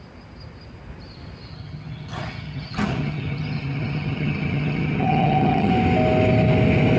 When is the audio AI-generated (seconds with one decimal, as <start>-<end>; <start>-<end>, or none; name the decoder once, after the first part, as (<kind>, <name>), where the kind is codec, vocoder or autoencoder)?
1.5-5.7 (vocoder, HiFi-GAN)